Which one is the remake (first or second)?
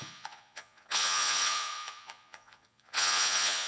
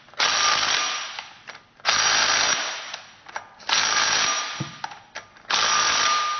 first